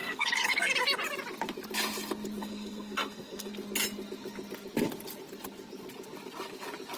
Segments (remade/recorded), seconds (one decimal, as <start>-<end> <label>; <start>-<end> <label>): 0.0-0.7 remade; 0.7-2.4 recorded; 2.4-3.5 remade; 3.5-7.0 recorded